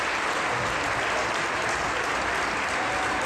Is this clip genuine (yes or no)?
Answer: yes